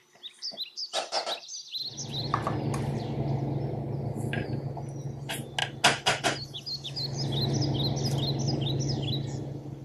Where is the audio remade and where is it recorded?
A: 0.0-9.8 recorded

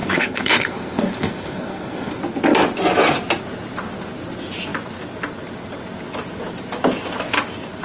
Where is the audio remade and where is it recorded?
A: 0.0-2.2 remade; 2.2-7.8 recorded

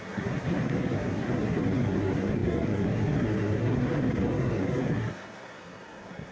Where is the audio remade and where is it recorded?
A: 0.0-6.3 remade

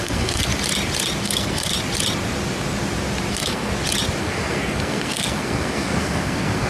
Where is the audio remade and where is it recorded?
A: 0.0-0.5 remade; 0.5-1.2 recorded; 1.2-1.7 remade; 1.7-3.3 recorded; 3.3-3.7 remade; 3.7-4.2 recorded; 4.2-6.7 remade

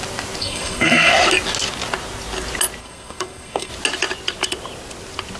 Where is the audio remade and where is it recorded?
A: 0.0-0.4 recorded; 0.4-1.1 remade; 1.1-2.8 recorded; 2.8-3.7 remade; 3.7-5.4 recorded

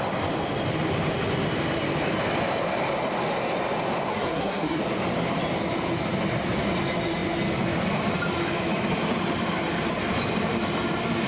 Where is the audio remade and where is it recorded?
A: 0.0-4.1 recorded; 4.1-4.8 remade; 4.8-11.3 recorded

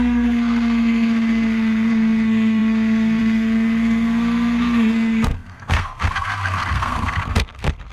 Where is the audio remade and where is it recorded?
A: 0.0-7.9 remade

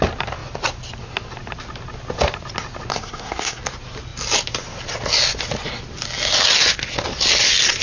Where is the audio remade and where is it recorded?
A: 0.0-2.9 recorded; 2.9-3.6 remade; 3.6-7.8 recorded